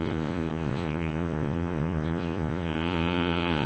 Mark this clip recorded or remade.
remade